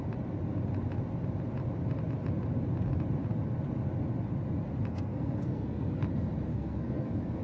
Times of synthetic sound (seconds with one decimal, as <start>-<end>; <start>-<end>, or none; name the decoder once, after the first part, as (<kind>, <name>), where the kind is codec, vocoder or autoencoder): 4.9-6.0 (codec, SNAC); 6.5-7.4